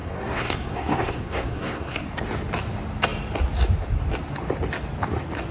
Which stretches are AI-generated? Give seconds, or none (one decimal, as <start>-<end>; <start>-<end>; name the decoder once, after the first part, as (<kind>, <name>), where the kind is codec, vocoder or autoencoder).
0.0-2.2 (codec, SNAC)